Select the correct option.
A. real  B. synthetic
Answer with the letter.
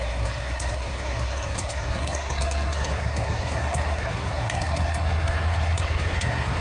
B